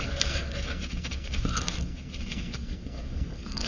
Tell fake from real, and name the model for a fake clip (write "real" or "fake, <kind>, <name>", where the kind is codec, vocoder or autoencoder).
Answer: fake, codec, SNAC